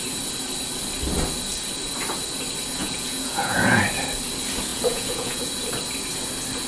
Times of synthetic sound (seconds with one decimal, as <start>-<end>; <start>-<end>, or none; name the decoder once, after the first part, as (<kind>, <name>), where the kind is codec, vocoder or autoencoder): 2.8-3.8 (vocoder, Vocos); 4.7-5.5